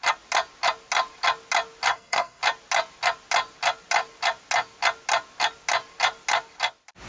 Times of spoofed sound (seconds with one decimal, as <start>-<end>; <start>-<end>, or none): 1.9-2.4